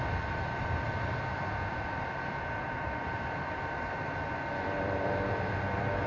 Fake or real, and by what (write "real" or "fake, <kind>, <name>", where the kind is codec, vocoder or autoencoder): fake, vocoder, BigVGAN v2